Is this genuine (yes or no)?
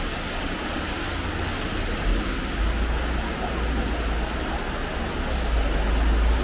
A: yes